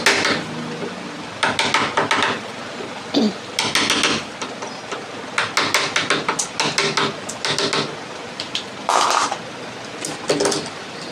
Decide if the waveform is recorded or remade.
recorded